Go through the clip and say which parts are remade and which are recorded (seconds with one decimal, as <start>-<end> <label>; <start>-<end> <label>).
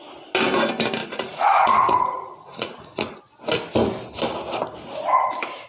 0.0-1.0 recorded; 1.0-3.2 remade; 3.2-5.7 recorded